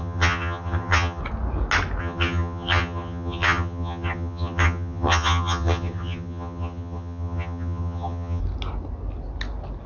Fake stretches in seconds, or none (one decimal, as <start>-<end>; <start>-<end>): 0.0-1.2; 2.0-8.4